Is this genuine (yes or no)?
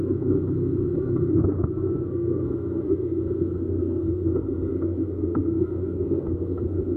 no